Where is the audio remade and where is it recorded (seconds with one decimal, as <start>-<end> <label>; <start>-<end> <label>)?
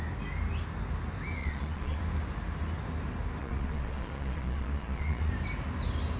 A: 0.0-1.4 recorded; 1.4-2.0 remade; 2.0-3.4 recorded; 3.4-5.3 remade; 5.3-6.2 recorded